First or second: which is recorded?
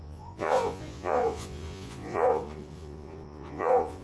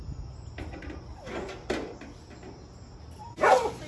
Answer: second